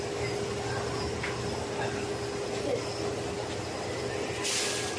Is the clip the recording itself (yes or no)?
yes